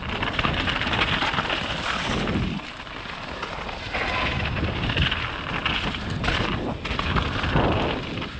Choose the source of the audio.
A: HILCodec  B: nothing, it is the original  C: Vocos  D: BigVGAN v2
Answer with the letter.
B